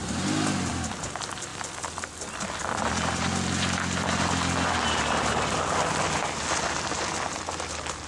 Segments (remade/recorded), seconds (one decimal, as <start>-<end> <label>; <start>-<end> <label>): 0.0-1.5 recorded; 1.5-6.4 remade; 6.4-8.1 recorded